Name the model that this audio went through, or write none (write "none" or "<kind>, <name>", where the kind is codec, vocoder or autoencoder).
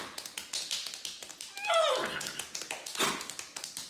none